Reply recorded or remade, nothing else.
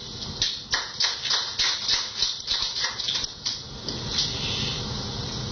recorded